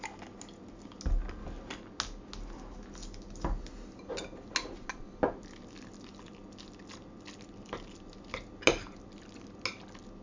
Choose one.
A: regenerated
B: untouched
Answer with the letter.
B